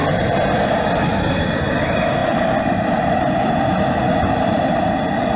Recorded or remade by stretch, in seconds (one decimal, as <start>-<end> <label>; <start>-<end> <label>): 0.0-5.4 recorded